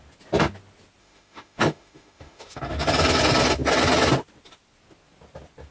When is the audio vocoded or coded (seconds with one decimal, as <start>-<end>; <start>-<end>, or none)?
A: 1.0-2.6